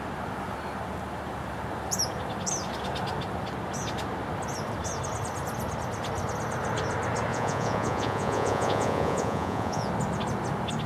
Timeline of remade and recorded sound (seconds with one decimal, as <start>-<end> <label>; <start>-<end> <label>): 0.0-7.3 recorded; 7.3-9.9 remade; 9.9-10.9 recorded